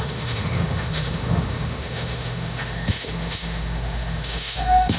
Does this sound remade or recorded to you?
remade